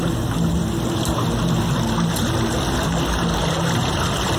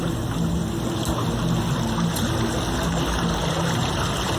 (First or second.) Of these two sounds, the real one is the second